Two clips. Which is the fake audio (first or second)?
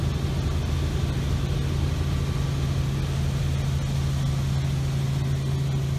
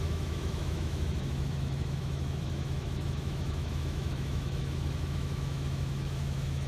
second